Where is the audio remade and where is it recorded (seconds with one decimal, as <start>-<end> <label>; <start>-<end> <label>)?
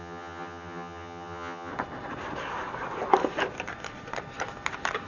0.0-1.7 remade; 1.7-5.1 recorded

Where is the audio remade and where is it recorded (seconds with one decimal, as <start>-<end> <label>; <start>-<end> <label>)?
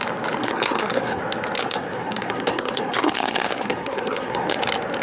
0.0-0.4 recorded; 0.4-1.2 remade; 1.2-1.6 recorded; 1.6-4.6 remade; 4.6-5.0 recorded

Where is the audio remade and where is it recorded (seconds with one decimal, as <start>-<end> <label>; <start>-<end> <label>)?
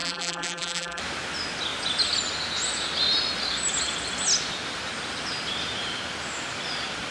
0.0-1.0 remade; 1.0-7.1 recorded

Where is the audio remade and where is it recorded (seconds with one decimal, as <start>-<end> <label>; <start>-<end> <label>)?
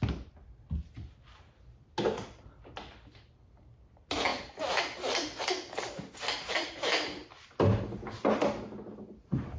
0.0-9.6 recorded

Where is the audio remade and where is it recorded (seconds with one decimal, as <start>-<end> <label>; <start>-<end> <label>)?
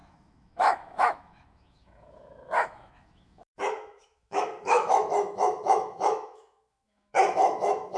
0.0-8.0 remade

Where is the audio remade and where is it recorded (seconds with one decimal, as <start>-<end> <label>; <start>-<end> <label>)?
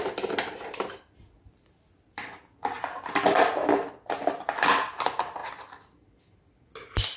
0.0-7.2 recorded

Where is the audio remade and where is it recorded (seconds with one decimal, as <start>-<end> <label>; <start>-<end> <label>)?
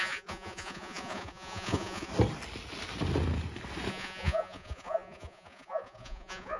0.0-2.1 remade; 2.1-3.9 recorded; 3.9-6.6 remade